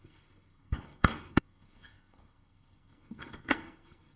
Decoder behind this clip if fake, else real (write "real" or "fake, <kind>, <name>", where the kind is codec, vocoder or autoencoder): fake, codec, SNAC